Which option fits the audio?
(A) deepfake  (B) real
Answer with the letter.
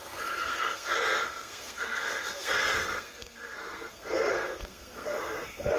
A